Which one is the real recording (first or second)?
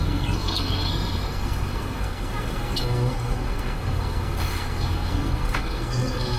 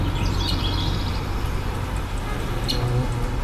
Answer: second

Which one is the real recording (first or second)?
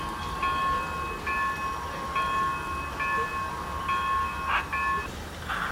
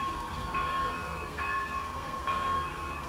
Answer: first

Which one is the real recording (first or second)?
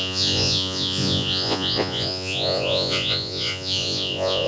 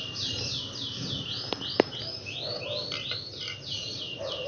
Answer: second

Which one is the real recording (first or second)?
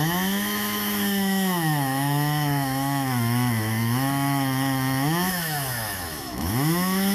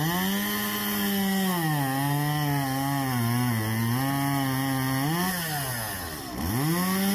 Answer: second